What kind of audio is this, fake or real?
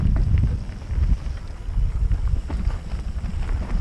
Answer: real